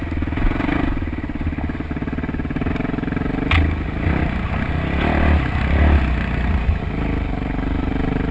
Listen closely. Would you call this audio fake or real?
real